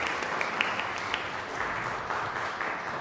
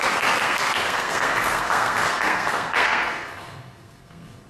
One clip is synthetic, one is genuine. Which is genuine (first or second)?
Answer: first